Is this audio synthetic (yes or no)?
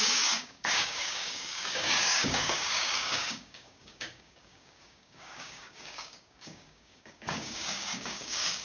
yes